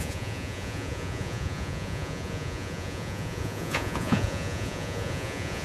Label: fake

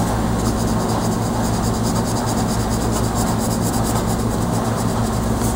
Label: real